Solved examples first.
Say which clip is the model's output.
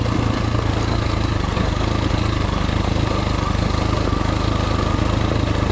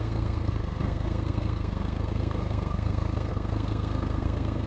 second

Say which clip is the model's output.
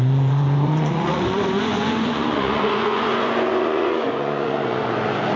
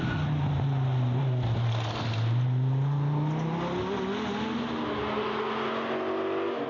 first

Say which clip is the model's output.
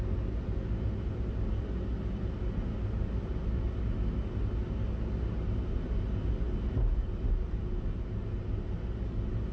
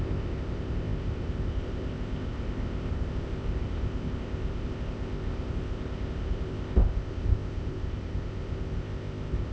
second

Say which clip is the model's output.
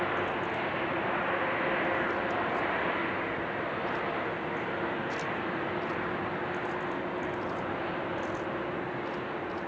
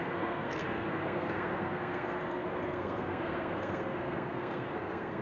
second